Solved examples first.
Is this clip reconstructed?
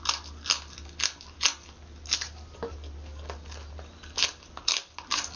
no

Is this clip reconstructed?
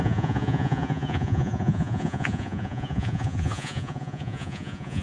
yes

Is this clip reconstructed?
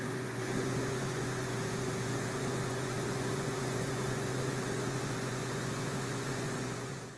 yes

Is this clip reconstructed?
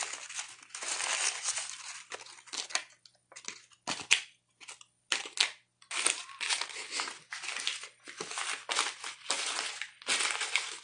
no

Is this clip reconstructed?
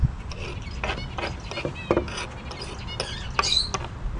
no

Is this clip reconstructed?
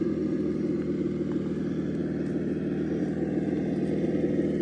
no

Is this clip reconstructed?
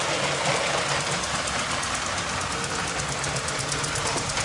no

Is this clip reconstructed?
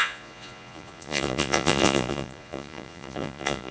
yes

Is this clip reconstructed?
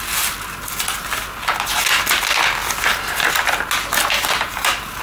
no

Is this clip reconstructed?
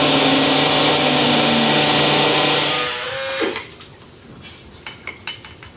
no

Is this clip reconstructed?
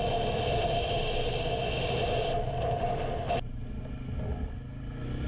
no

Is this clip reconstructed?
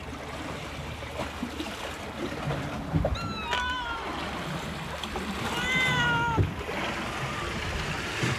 no